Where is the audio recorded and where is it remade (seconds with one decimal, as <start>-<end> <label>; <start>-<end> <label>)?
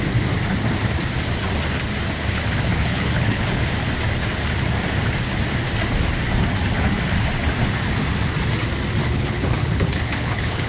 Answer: 0.0-2.7 recorded; 2.7-3.5 remade; 3.5-9.0 recorded; 9.0-10.7 remade